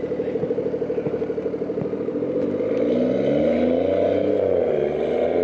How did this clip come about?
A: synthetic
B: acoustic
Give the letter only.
B